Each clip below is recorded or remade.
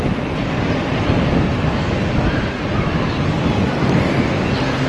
recorded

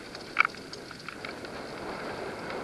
recorded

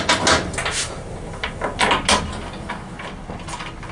recorded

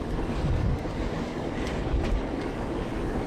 remade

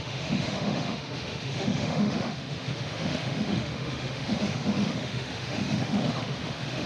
remade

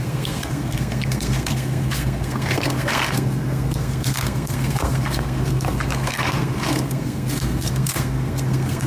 remade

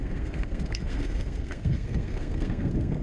remade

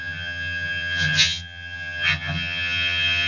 remade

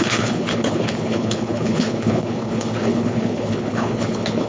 remade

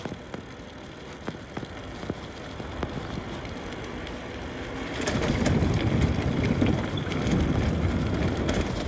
recorded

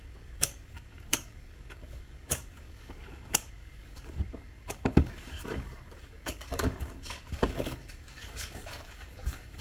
remade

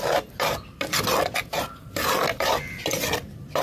recorded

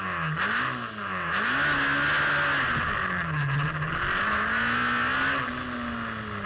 recorded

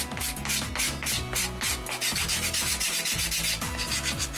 recorded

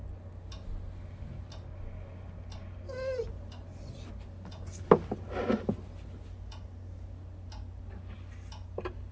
recorded